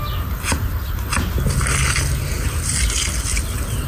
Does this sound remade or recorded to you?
recorded